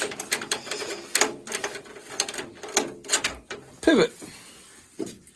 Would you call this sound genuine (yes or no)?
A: yes